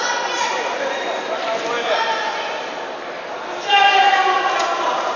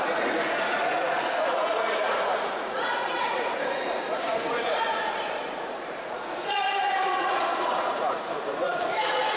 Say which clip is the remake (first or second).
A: second